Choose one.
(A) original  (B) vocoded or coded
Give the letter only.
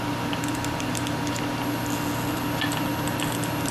A